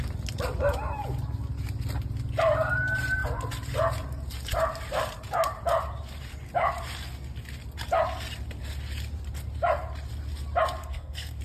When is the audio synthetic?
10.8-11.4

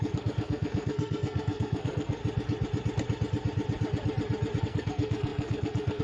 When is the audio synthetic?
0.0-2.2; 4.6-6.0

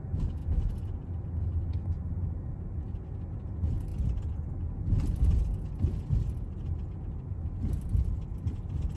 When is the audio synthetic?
none

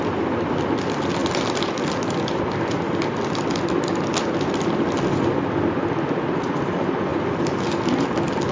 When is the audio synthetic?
none

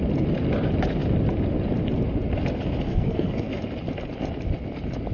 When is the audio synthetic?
2.9-3.6

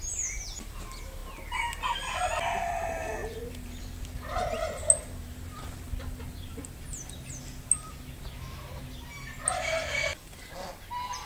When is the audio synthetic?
none

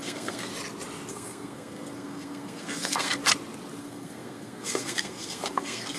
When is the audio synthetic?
0.0-0.5; 1.1-3.2; 3.8-6.0

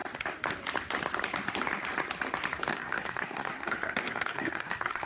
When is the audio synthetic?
2.7-5.1